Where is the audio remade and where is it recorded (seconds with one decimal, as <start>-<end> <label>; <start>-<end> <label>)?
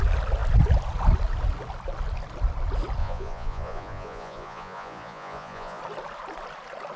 0.0-3.0 recorded; 3.0-5.8 remade; 5.8-7.0 recorded